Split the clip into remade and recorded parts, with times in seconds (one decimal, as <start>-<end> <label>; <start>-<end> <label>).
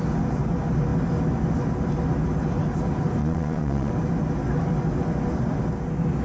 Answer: 0.0-3.2 recorded; 3.2-3.9 remade; 3.9-6.2 recorded